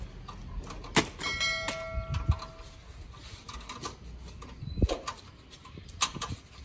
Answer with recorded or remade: recorded